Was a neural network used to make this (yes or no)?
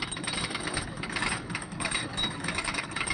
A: yes